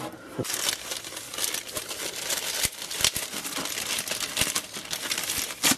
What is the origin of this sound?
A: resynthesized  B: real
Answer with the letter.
B